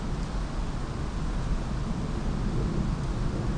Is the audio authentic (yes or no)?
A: yes